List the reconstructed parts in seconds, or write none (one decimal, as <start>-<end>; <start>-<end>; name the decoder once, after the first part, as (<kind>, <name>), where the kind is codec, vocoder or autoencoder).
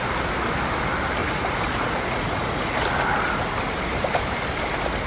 1.2-2.8 (vocoder, Vocos)